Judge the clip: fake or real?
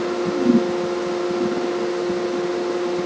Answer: real